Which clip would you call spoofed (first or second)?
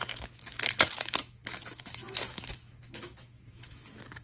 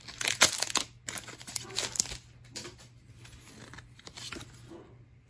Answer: first